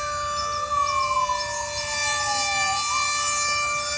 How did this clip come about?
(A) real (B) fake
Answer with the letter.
A